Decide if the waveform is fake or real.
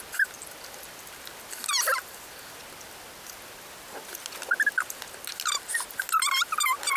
real